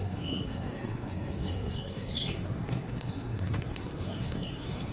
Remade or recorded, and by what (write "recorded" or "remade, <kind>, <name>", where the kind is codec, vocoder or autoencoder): remade, codec, SNAC